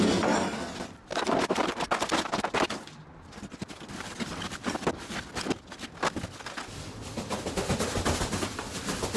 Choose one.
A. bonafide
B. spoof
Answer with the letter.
A